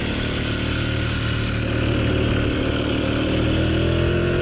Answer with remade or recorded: recorded